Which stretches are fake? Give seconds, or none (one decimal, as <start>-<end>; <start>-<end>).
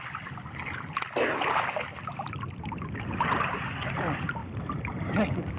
none